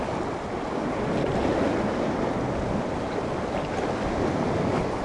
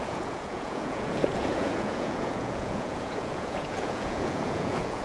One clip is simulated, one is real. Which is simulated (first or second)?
second